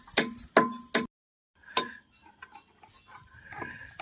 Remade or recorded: recorded